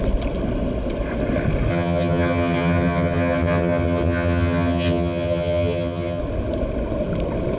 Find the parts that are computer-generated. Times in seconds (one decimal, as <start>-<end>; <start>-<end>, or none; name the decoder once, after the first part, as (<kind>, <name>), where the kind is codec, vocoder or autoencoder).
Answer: 1.7-6.2 (vocoder, HiFi-GAN)